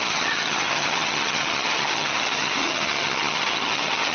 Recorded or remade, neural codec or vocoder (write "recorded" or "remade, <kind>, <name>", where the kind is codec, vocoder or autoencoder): remade, vocoder, HiFi-GAN